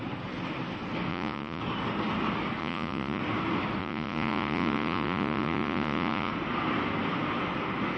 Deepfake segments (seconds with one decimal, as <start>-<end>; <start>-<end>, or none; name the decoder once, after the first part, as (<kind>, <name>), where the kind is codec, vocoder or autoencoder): 1.1-1.6 (vocoder, Vocos); 2.6-3.2; 3.8-6.3

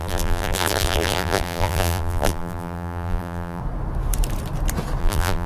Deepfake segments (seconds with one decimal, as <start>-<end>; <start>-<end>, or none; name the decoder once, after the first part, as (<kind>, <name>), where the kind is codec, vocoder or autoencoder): 0.0-3.6 (vocoder, BigVGAN v2); 5.0-5.5

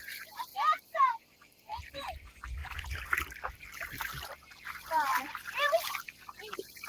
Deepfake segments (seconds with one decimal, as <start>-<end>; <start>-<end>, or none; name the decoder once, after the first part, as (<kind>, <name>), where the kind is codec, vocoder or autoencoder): 0.5-1.3 (vocoder, BigVGAN v2); 2.6-4.5; 5.1-5.9

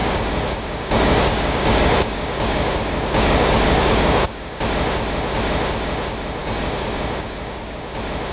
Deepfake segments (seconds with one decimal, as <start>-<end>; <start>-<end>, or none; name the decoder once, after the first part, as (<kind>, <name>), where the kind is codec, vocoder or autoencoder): 0.0-4.6 (codec, DAC); 6.4-7.8

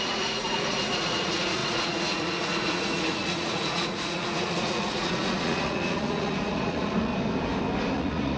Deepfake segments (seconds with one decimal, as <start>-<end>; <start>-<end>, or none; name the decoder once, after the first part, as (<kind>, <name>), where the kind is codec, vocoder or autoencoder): 0.0-7.1 (vocoder, Vocos); 7.9-8.4

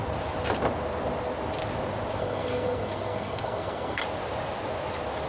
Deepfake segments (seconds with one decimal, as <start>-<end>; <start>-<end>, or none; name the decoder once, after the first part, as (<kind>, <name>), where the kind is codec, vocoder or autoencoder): 2.2-4.0 (codec, SNAC)

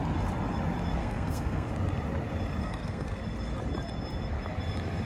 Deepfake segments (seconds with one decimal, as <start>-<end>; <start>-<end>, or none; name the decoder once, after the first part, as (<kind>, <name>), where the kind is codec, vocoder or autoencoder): 1.0-1.7 (codec, SNAC); 2.6-3.2